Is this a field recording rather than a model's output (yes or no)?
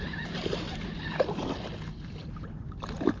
yes